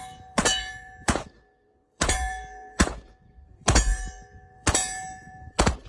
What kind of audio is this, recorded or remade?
remade